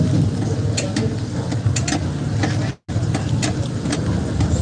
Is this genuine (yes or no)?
yes